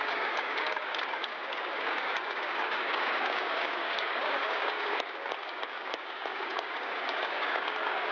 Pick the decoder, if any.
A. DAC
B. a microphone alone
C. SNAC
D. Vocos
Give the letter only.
A